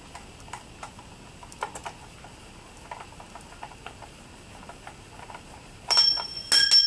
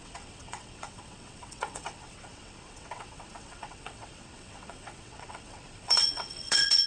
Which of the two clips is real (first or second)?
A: first